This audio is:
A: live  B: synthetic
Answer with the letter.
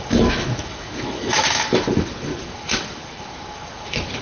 B